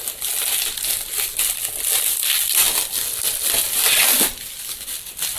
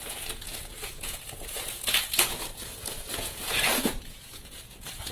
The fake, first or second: second